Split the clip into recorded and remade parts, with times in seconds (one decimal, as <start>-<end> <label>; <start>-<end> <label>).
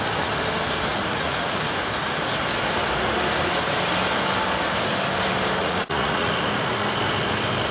0.0-0.9 recorded; 0.9-1.6 remade; 1.6-5.6 recorded; 5.6-6.3 remade; 6.3-7.7 recorded